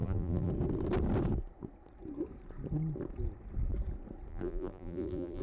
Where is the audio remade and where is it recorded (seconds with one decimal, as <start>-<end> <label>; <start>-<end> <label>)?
0.0-0.5 remade; 0.5-4.3 recorded; 4.3-5.4 remade